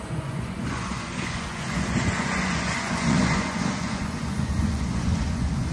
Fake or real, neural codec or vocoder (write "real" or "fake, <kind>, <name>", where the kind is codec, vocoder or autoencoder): fake, vocoder, Vocos